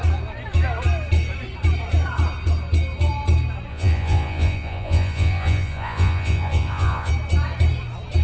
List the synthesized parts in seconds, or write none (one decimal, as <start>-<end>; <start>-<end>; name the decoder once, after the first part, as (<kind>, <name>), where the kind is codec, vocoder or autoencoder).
3.7-7.1 (vocoder, Vocos)